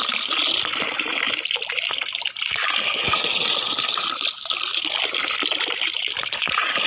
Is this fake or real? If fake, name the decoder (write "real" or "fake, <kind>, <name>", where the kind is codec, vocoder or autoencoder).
real